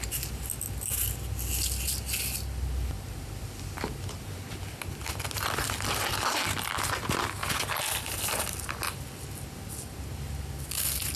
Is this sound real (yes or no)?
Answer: yes